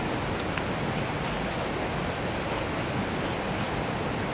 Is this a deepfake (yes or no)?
no